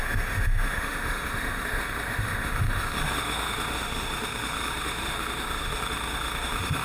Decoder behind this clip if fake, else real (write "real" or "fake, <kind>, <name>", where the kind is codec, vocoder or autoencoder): fake, autoencoder, DAC-VAE